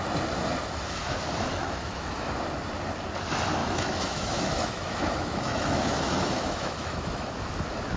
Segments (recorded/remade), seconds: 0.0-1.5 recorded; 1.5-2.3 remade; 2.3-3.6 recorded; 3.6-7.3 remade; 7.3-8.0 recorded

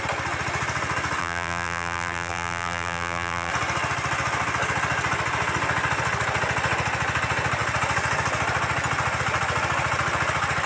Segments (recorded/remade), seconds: 0.0-1.2 recorded; 1.2-3.5 remade; 3.5-10.7 recorded

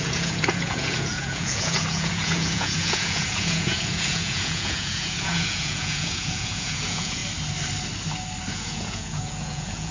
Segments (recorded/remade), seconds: 0.0-7.2 remade; 7.2-8.5 recorded; 8.5-9.9 remade

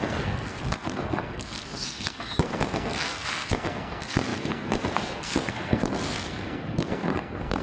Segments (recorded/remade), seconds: 0.0-7.6 remade

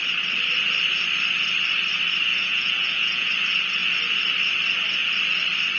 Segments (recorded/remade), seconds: 0.0-2.3 recorded; 2.3-3.3 remade; 3.3-5.8 recorded